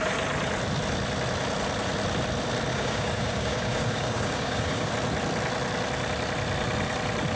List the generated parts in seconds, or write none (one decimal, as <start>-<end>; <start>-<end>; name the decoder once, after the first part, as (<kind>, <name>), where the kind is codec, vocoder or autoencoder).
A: 2.7-4.9 (codec, DAC)